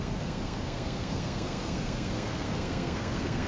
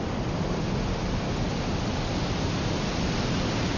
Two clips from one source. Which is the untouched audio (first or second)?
second